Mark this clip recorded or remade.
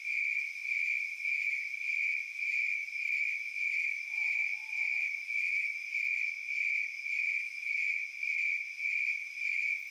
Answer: recorded